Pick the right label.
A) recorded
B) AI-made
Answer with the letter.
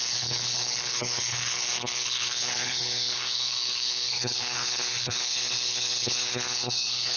B